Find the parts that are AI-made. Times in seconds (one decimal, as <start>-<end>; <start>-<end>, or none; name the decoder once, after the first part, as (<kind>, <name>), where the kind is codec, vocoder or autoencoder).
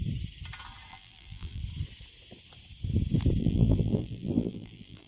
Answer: 0.9-1.6 (vocoder, BigVGAN v2); 3.4-5.1